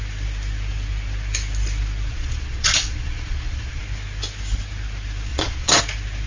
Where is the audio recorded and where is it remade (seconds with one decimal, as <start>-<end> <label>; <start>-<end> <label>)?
0.0-2.1 recorded; 2.1-3.8 remade; 3.8-5.3 recorded; 5.3-5.8 remade; 5.8-6.3 recorded